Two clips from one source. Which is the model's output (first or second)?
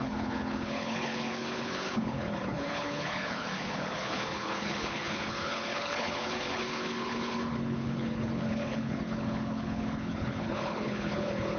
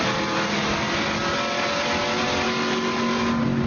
first